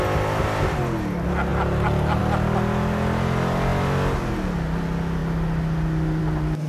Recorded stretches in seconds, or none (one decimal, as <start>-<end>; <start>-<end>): 0.0-1.5; 2.2-6.7